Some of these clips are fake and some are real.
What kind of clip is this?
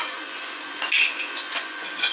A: fake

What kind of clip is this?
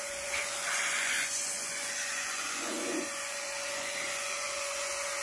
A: fake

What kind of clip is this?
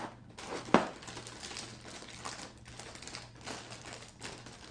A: real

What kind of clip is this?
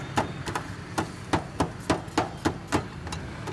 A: real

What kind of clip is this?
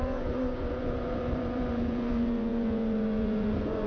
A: fake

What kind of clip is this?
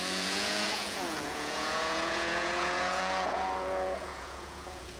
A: fake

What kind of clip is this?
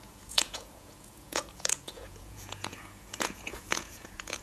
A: fake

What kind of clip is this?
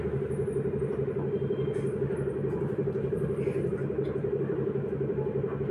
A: real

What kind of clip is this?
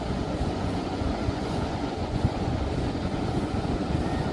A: fake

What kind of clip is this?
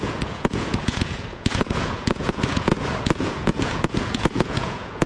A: fake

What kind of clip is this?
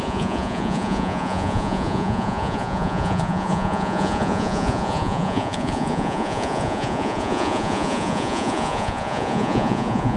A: fake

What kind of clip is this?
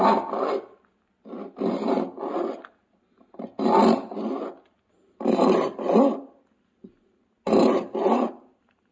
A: real